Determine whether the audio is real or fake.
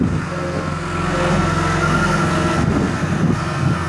fake